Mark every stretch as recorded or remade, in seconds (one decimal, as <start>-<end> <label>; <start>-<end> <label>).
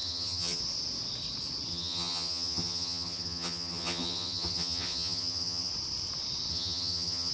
0.0-0.6 remade; 0.6-1.7 recorded; 1.7-5.7 remade; 5.7-6.5 recorded; 6.5-7.3 remade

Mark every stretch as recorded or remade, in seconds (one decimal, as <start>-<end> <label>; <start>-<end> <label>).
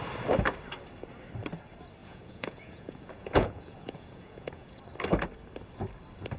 0.0-2.0 recorded; 2.0-4.8 remade; 4.8-6.4 recorded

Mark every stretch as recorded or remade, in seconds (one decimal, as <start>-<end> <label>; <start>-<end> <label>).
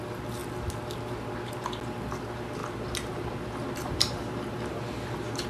0.0-0.4 remade; 0.4-1.9 recorded; 1.9-2.6 remade; 2.6-3.4 recorded; 3.4-5.5 remade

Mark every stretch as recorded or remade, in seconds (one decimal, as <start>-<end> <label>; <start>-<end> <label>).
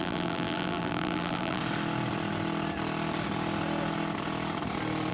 0.0-1.6 remade; 1.6-5.1 recorded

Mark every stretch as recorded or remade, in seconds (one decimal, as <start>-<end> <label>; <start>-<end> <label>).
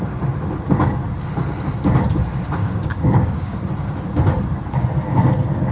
0.0-2.6 recorded; 2.6-3.7 remade; 3.7-5.7 recorded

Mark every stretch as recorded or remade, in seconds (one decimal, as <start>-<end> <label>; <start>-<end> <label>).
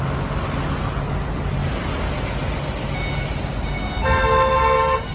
0.0-5.1 recorded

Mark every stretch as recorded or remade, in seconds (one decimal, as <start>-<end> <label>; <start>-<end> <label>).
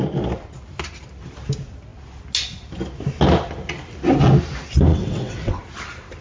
0.0-4.9 recorded; 4.9-5.6 remade; 5.6-6.2 recorded